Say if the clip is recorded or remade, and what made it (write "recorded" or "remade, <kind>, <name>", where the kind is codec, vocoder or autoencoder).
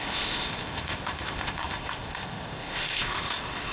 remade, codec, ZipCodec